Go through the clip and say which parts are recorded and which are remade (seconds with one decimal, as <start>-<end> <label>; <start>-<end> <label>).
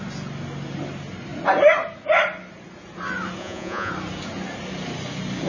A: 0.0-3.4 recorded; 3.4-3.9 remade; 3.9-5.5 recorded